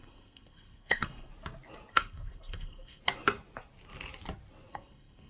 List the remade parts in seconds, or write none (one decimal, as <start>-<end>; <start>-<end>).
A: 0.0-1.3; 1.9-3.0; 4.7-5.3

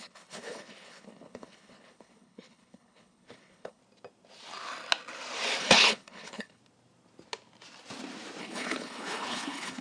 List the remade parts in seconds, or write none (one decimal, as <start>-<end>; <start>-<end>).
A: 0.0-3.8; 5.6-6.6; 8.4-9.8